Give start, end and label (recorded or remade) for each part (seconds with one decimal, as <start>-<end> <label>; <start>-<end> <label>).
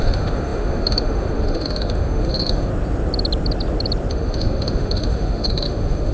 0.0-2.7 remade; 2.7-4.1 recorded; 4.1-6.1 remade